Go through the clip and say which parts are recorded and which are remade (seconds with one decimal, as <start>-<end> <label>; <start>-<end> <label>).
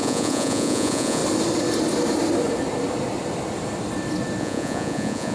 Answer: 0.0-1.2 remade; 1.2-4.4 recorded; 4.4-5.3 remade